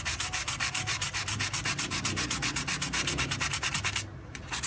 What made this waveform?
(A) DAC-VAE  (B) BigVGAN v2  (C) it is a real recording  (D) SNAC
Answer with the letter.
C